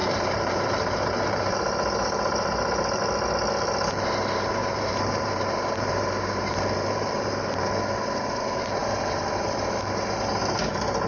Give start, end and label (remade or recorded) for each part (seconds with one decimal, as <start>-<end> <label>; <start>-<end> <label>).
0.0-3.0 remade; 3.0-4.6 recorded; 4.6-7.7 remade; 7.7-11.1 recorded